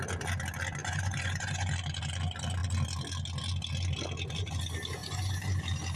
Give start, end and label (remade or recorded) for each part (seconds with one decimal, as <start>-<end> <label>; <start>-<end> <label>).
0.0-0.8 recorded; 0.8-1.7 remade; 1.7-5.0 recorded; 5.0-5.6 remade; 5.6-6.0 recorded